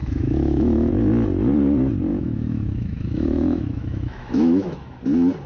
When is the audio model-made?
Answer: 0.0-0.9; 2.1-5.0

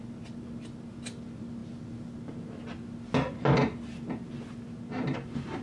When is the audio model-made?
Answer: none

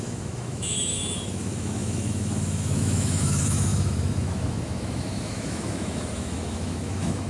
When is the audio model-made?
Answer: 0.0-7.3

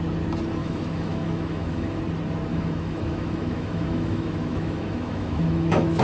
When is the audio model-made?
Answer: 0.6-2.0; 2.5-6.0